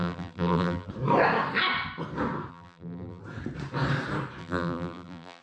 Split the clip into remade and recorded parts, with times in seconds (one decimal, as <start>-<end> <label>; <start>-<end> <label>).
0.0-0.9 remade; 0.9-2.5 recorded; 2.5-3.2 remade; 3.2-4.4 recorded; 4.4-5.4 remade